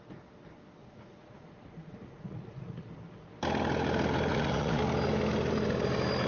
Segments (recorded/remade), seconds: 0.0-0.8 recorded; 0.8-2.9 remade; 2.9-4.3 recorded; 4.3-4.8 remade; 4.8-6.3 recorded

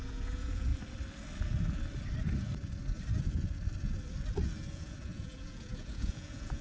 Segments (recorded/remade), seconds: 0.0-0.7 remade; 0.7-4.7 recorded; 4.7-6.6 remade

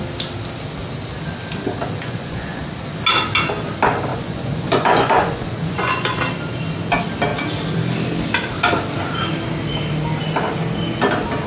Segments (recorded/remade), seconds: 0.0-2.0 recorded; 2.0-2.6 remade; 2.6-4.1 recorded; 4.1-6.2 remade; 6.2-11.5 recorded